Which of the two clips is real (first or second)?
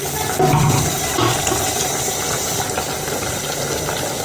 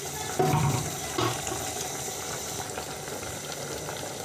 second